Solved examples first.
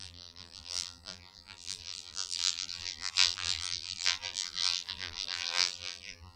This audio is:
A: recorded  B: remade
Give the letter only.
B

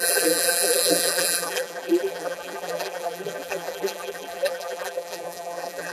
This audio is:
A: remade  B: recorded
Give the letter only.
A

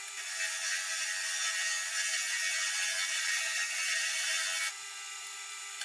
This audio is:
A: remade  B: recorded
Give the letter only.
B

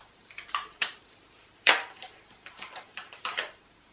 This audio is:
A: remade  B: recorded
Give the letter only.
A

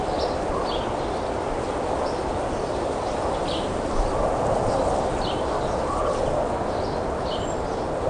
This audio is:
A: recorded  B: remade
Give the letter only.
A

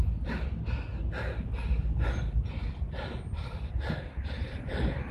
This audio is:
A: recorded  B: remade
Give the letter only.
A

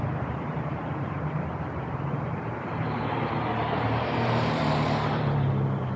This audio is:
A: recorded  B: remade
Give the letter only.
B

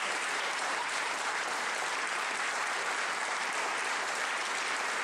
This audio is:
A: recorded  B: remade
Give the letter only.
B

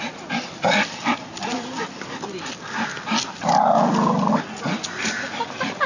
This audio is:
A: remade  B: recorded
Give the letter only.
B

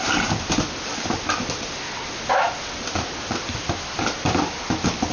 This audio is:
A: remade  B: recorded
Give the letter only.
B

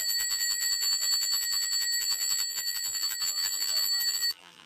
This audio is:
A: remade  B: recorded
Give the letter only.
A